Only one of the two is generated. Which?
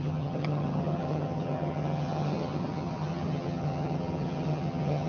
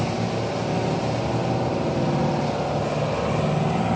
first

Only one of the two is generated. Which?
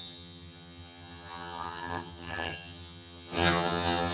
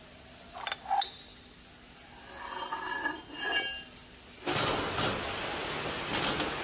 first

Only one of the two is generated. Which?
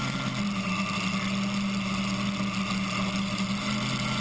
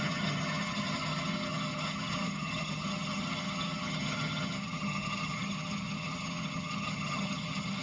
second